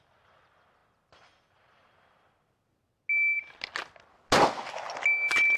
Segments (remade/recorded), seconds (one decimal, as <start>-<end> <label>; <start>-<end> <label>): 0.0-5.6 recorded